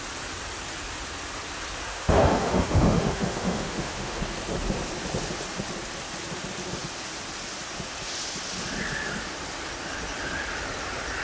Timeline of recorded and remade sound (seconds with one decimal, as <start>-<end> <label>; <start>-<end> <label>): 0.0-1.9 recorded; 1.9-4.2 remade; 4.2-11.2 recorded

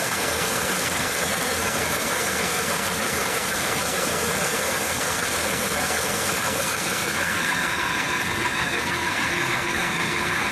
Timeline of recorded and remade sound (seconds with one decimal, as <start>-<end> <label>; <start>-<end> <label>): 0.0-10.5 remade

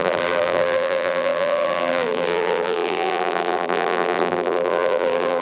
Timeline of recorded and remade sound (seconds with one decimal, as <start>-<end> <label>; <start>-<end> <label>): 0.0-5.4 remade

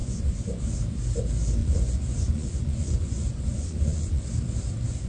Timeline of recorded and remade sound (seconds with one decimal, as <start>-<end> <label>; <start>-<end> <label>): 0.0-0.6 remade; 0.6-1.6 recorded; 1.6-4.2 remade; 4.2-5.1 recorded

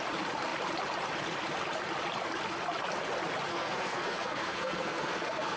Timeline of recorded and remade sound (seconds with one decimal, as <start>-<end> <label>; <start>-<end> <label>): 0.0-3.5 recorded; 3.5-5.6 remade

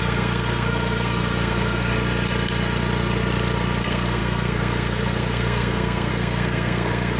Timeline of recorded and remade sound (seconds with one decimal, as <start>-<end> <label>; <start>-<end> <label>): 0.0-1.9 remade; 1.9-3.8 recorded; 3.8-7.2 remade

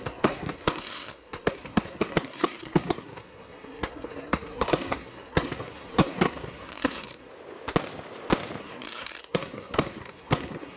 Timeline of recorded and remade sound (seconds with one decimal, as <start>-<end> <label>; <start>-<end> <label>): 0.0-7.3 remade; 7.3-8.6 recorded; 8.6-10.8 remade

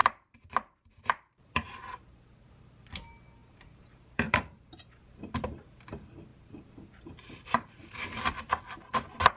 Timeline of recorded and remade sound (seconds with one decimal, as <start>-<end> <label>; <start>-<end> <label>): 0.0-2.5 remade; 2.5-3.4 recorded; 3.4-5.8 remade; 5.8-6.3 recorded; 6.3-8.2 remade; 8.2-9.4 recorded